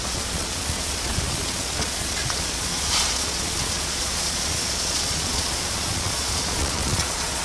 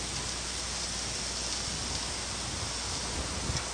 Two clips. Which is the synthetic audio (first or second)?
first